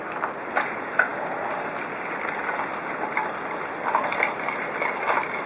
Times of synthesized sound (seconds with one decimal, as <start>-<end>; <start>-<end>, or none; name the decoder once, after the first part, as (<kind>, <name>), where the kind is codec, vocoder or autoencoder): none